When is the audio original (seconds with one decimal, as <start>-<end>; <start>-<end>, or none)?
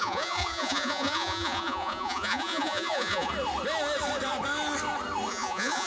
3.3-5.3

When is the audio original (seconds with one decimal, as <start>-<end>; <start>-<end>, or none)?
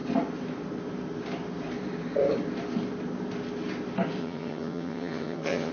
0.0-4.2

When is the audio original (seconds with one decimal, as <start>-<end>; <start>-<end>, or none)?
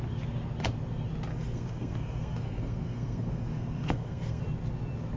0.0-1.3; 4.4-5.2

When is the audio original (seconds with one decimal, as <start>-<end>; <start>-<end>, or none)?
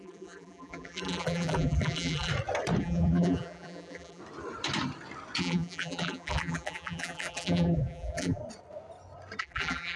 2.3-2.8; 4.2-5.4; 8.4-9.4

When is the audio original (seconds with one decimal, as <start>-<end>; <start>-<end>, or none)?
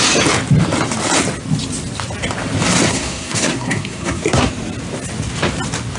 0.0-2.9; 4.5-6.0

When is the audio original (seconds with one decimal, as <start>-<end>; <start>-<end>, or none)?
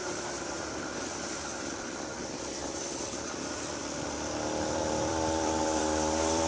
none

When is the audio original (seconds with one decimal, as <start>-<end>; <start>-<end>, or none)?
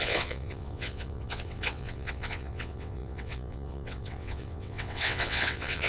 none